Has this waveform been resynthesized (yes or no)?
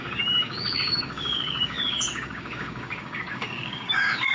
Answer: yes